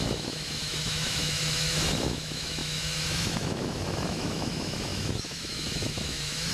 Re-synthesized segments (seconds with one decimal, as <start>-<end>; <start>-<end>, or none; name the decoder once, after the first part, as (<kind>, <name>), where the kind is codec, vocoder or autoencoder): 0.0-6.5 (autoencoder, DAC-VAE)